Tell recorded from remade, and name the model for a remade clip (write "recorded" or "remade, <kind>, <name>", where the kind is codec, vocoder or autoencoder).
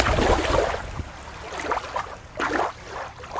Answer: recorded